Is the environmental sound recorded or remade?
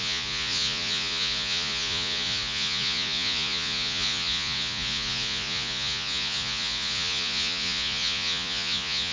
remade